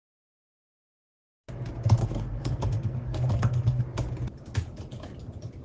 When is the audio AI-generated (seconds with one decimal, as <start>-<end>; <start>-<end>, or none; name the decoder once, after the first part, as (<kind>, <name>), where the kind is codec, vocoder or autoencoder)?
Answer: 2.0-3.8 (codec, SNAC)